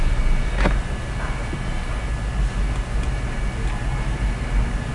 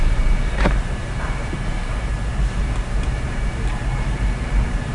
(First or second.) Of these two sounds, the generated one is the second